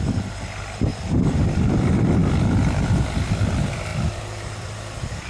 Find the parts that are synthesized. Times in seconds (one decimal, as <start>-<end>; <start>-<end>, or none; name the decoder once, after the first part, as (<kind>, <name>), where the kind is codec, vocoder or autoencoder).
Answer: 0.9-1.6 (vocoder, BigVGAN v2); 3.9-5.3